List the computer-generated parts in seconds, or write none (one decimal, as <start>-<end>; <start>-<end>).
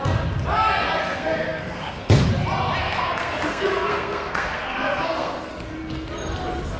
1.0-2.2; 2.8-5.5